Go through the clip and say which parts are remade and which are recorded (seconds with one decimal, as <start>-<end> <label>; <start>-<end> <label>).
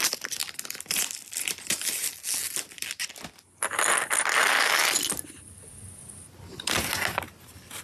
0.0-7.8 recorded